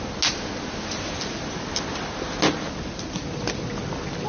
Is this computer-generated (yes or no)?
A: no